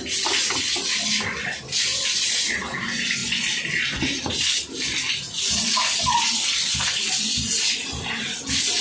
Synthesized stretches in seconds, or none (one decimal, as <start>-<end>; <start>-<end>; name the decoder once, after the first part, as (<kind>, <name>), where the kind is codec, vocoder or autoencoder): none